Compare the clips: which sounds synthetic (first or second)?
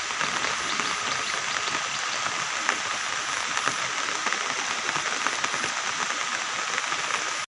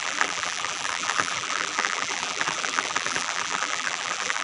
second